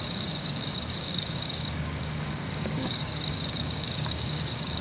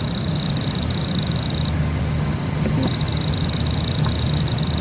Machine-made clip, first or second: first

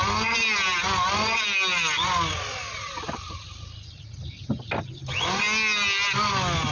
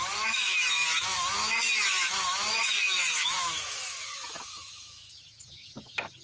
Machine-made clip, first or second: second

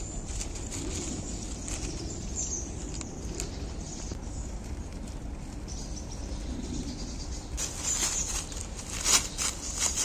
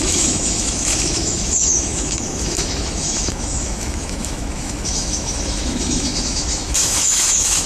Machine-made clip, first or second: second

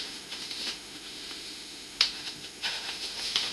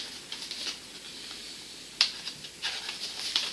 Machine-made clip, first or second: first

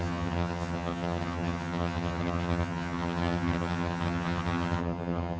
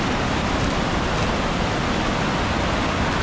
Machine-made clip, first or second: first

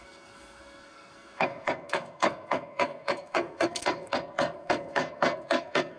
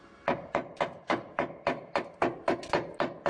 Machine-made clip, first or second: first